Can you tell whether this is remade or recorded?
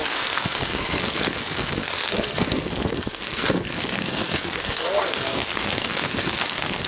remade